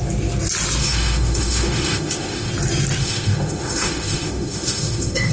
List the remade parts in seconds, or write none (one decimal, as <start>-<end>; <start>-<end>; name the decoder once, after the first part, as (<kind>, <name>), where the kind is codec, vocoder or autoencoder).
0.8-2.5 (autoencoder, DAC-VAE); 3.0-5.3